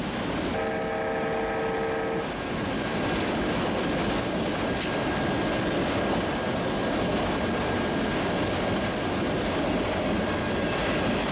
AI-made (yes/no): no